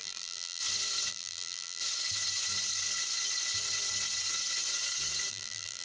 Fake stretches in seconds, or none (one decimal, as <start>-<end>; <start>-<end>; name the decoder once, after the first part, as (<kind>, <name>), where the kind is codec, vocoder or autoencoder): 0.0-0.6 (vocoder, BigVGAN v2); 1.1-1.8; 5.3-5.8